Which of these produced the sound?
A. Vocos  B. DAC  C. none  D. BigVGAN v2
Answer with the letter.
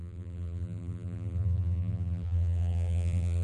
D